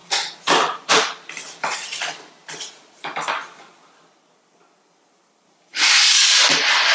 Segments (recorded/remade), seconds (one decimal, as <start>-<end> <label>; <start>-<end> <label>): 0.0-6.9 remade